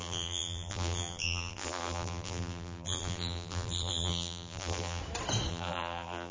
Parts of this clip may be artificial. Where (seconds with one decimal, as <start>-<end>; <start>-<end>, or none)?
0.0-5.0; 5.5-6.3